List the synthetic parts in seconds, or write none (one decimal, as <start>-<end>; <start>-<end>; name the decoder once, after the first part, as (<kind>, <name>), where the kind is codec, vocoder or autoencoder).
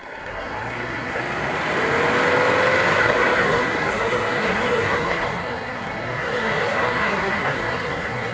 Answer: 0.0-1.2 (codec, SNAC); 3.0-8.3